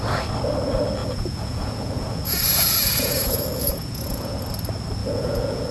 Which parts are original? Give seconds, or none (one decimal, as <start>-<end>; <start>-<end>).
0.0-1.0; 4.4-5.0